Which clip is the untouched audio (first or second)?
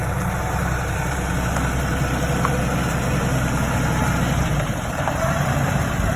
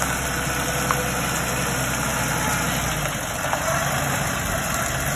second